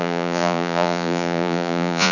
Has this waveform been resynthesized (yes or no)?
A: yes